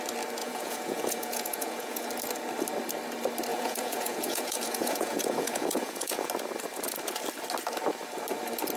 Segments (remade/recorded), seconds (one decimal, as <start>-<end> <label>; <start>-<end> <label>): 0.0-0.4 recorded; 0.4-2.1 remade; 2.1-3.5 recorded; 3.5-6.3 remade; 6.3-8.8 recorded